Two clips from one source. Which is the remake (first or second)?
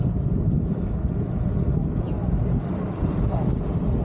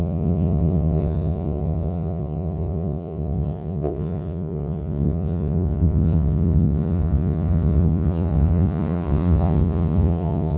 second